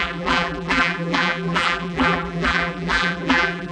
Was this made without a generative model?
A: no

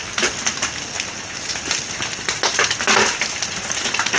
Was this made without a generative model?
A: yes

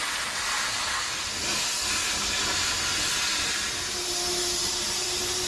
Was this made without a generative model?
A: yes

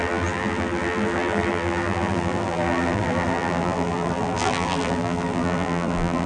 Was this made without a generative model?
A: no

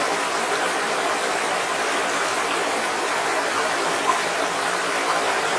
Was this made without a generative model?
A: yes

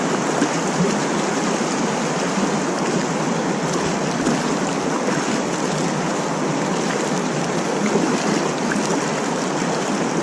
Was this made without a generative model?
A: yes